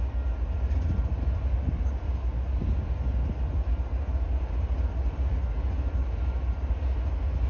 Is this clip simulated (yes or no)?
no